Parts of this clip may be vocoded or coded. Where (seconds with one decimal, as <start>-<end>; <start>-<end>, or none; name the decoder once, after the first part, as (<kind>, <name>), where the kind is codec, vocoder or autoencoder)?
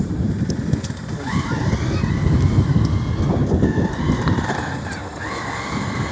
none